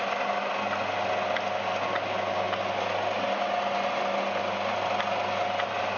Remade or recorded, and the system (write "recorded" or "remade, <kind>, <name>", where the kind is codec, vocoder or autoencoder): recorded